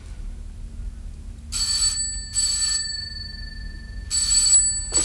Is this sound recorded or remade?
recorded